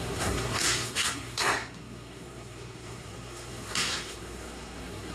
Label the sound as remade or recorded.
remade